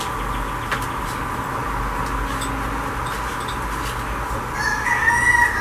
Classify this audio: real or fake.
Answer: real